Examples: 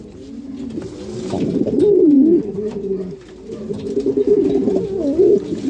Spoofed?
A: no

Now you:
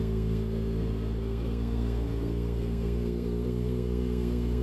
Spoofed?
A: yes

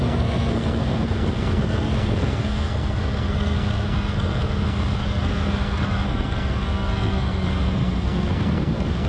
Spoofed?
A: yes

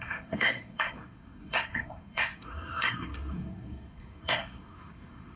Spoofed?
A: yes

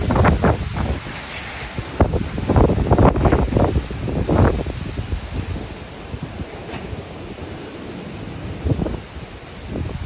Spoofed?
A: no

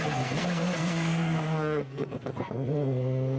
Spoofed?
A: yes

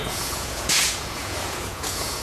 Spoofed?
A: yes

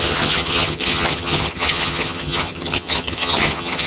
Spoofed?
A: yes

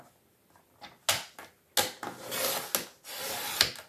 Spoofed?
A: no